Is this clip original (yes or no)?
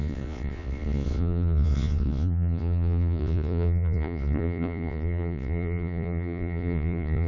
no